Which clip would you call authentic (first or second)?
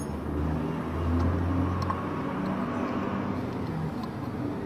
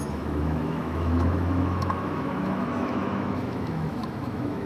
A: first